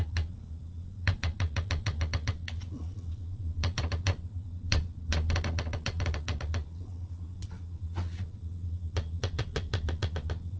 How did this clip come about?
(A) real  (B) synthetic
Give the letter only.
B